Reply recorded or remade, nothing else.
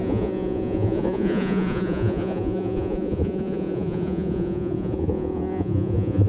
remade